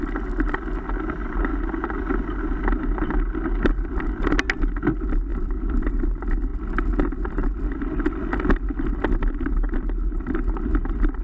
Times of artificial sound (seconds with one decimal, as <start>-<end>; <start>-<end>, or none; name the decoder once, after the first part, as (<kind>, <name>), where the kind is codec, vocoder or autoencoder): none